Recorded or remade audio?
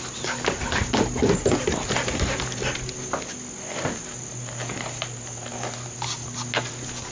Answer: recorded